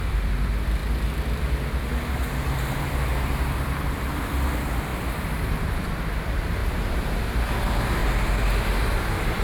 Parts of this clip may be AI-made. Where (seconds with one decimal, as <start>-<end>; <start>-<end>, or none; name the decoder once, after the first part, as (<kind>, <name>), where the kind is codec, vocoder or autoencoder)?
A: 0.0-0.8 (vocoder, BigVGAN v2); 2.8-8.0; 8.8-9.4